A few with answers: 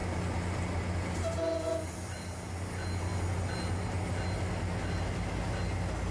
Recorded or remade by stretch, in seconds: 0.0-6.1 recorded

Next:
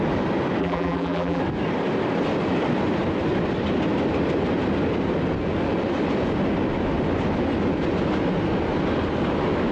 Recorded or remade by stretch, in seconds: 0.0-0.6 recorded; 0.6-1.4 remade; 1.4-9.7 recorded

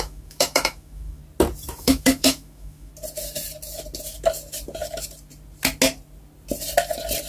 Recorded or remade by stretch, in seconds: 0.0-1.2 remade; 1.2-1.8 recorded; 1.8-2.9 remade; 2.9-7.3 recorded

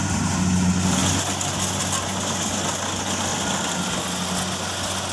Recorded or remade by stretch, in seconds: 0.0-5.1 recorded

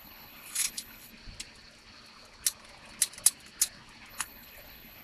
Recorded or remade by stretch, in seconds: 0.0-1.1 remade; 1.1-4.1 recorded; 4.1-5.0 remade

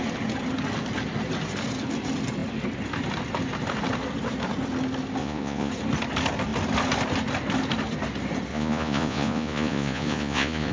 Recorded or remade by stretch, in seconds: 0.0-5.2 recorded; 5.2-5.7 remade; 5.7-8.5 recorded; 8.5-10.7 remade

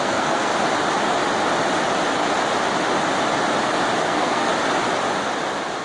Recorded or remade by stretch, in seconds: 0.0-0.5 remade; 0.5-4.0 recorded; 4.0-4.5 remade; 4.5-5.8 recorded